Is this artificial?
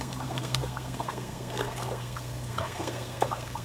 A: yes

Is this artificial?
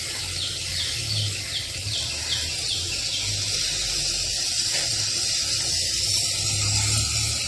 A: no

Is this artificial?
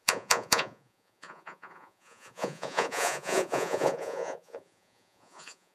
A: yes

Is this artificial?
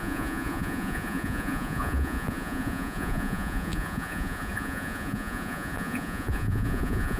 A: yes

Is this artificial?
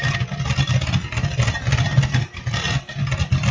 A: no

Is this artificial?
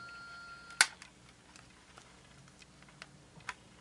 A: no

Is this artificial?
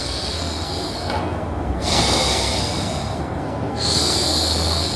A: yes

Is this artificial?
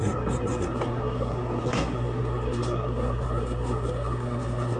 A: yes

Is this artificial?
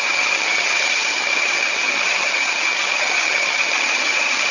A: yes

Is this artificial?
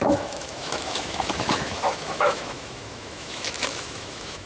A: yes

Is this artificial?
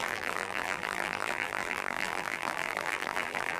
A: yes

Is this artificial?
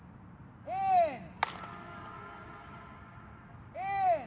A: no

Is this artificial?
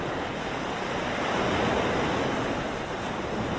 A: no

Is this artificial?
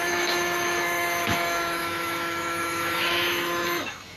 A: yes